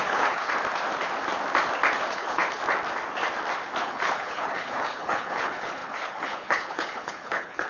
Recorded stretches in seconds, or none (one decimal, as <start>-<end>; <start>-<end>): 0.5-2.1; 2.6-3.8